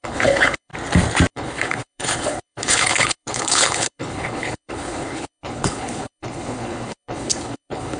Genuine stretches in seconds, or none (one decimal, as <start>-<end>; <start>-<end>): 0.7-1.3